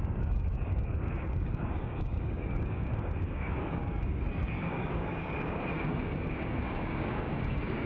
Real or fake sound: fake